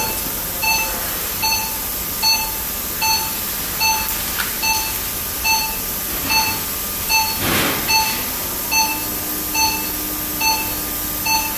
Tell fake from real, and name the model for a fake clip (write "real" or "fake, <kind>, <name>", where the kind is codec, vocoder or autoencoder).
real